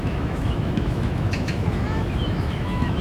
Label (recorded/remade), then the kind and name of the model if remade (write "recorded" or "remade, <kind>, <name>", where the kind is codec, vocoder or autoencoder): remade, autoencoder, DAC-VAE